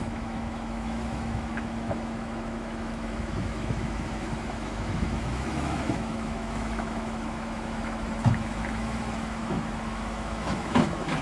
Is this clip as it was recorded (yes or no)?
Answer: no